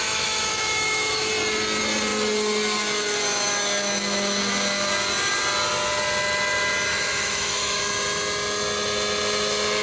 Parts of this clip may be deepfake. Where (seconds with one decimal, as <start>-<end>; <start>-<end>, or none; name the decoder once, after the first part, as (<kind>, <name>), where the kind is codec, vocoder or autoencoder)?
0.0-1.3 (autoencoder, DAC-VAE); 6.9-7.8